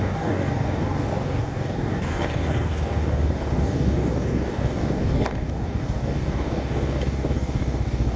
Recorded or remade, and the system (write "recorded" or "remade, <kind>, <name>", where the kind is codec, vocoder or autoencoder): remade, codec, DAC